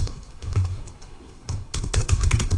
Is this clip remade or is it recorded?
remade